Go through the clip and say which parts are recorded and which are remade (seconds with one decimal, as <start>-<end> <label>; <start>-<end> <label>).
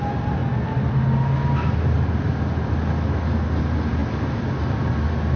0.0-5.4 recorded